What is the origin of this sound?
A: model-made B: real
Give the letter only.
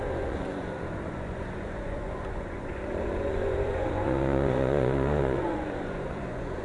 A